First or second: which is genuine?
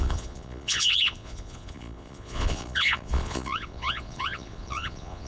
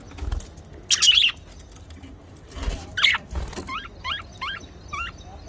second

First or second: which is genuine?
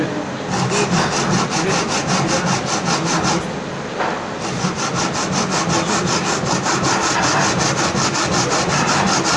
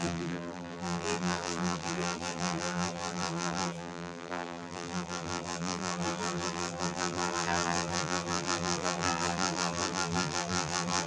first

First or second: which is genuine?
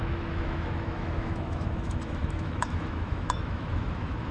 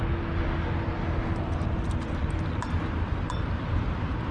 second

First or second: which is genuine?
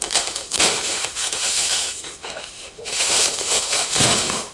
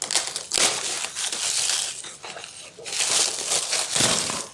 second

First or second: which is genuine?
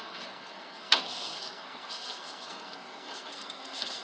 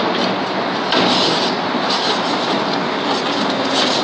second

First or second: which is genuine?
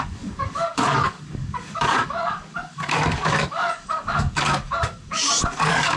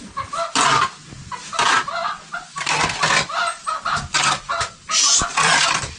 second